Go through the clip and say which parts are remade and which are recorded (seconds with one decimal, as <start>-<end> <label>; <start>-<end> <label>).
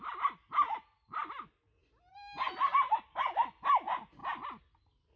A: 0.0-5.2 recorded